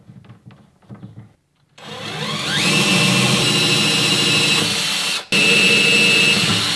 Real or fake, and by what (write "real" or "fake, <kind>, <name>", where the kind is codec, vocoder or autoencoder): real